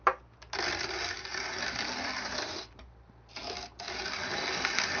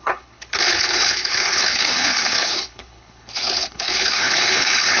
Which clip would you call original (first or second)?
first